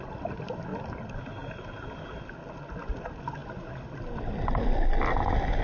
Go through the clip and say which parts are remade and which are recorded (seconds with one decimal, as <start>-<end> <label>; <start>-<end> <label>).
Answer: 0.0-5.6 recorded